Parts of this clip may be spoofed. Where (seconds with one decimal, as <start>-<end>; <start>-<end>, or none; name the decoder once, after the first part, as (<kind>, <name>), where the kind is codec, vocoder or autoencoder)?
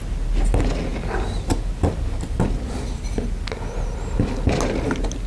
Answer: none